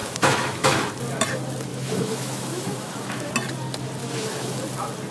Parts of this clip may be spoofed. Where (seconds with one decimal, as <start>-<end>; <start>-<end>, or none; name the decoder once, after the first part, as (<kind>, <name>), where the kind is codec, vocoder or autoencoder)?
0.0-0.9 (autoencoder, DAC-VAE); 1.7-3.3; 4.0-4.6